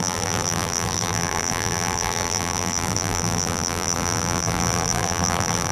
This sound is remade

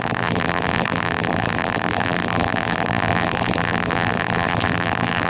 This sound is remade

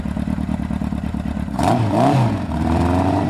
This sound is recorded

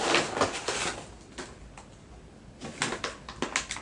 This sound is recorded